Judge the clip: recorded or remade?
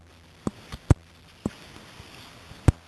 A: recorded